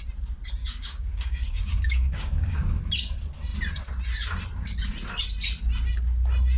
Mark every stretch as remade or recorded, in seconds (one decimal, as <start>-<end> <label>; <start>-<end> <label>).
0.0-0.6 recorded; 0.6-2.8 remade; 2.8-6.6 recorded